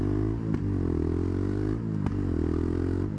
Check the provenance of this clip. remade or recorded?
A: recorded